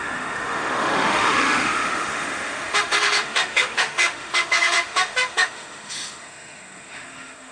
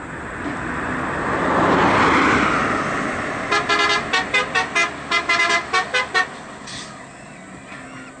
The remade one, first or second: first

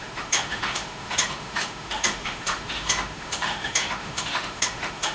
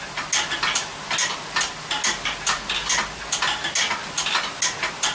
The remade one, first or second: first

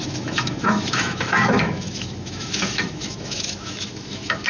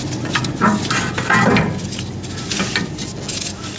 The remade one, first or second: first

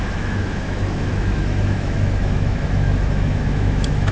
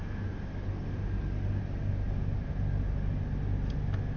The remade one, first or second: first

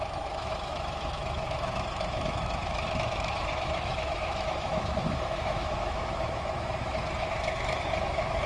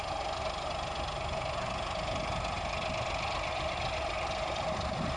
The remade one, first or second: first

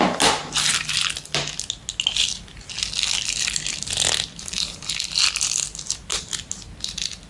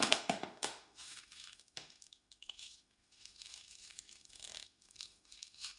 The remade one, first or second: second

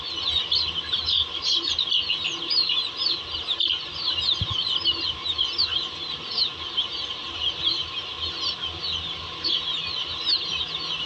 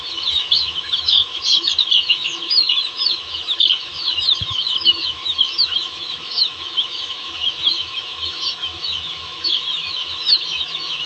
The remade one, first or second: second